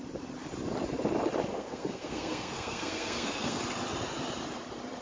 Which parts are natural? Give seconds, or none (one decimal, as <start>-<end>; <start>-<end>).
0.0-1.5; 3.6-5.0